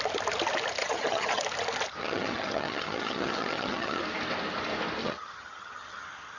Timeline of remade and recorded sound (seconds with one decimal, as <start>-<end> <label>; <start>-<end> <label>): 0.0-0.8 recorded; 0.8-1.4 remade; 1.4-2.0 recorded; 2.0-4.0 remade; 4.0-5.0 recorded; 5.0-6.4 remade